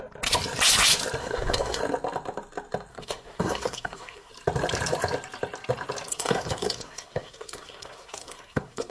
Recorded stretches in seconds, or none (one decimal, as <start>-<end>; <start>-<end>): 0.0-1.2; 1.8-2.9; 4.3-6.1